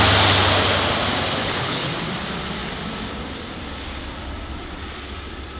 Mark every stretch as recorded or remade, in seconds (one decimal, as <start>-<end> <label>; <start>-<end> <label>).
0.0-1.4 recorded; 1.4-1.9 remade; 1.9-5.6 recorded